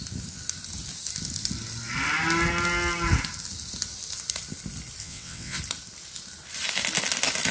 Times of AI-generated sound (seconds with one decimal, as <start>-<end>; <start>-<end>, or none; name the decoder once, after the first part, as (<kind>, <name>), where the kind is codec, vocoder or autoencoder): 5.0-5.6 (vocoder, WaveNeXt)